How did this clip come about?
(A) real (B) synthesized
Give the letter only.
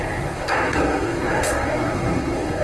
B